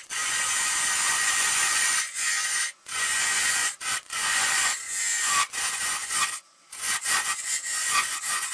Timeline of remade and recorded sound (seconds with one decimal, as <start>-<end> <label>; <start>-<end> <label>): 0.0-8.5 remade